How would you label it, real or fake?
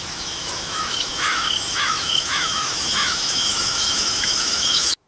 fake